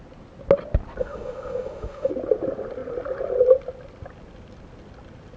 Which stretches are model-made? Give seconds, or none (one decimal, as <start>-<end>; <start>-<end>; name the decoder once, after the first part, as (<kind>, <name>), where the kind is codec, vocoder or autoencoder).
1.0-2.1 (autoencoder, DAC-VAE)